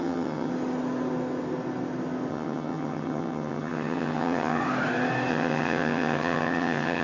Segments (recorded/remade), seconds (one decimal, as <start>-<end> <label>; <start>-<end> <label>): 0.0-0.5 remade; 0.5-2.3 recorded; 2.3-4.6 remade; 4.6-5.3 recorded; 5.3-7.0 remade